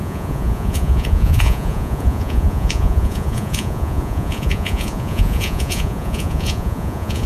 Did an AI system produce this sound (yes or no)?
yes